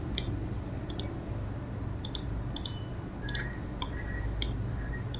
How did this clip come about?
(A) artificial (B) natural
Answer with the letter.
B